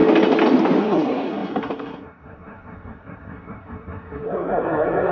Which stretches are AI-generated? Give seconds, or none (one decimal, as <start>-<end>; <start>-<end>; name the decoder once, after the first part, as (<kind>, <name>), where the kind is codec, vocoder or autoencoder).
0.8-5.1 (codec, SNAC)